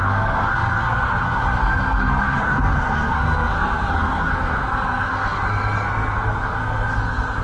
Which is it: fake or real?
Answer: fake